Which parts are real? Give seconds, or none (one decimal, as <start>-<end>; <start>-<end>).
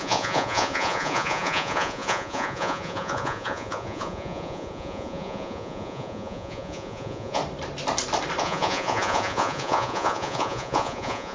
7.4-8.4